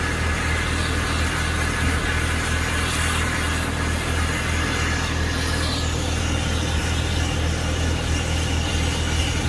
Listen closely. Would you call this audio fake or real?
real